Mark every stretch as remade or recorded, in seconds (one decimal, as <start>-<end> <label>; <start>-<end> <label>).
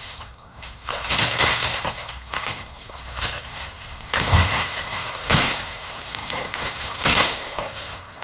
0.0-8.2 remade